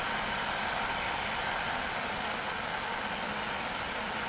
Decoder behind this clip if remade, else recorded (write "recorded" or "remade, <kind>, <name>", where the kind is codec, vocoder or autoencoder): recorded